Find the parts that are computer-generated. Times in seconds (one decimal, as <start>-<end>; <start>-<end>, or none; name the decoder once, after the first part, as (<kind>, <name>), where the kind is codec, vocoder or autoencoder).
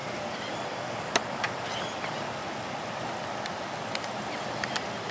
none